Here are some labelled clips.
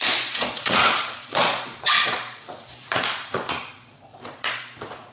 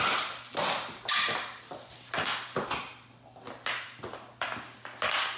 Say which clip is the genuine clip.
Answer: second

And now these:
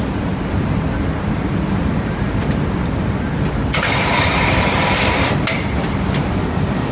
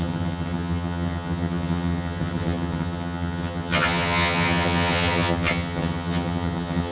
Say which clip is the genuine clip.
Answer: first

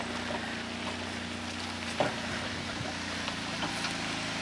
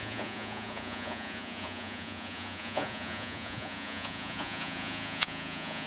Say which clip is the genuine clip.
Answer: first